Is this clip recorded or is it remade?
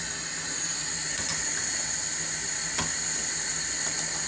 recorded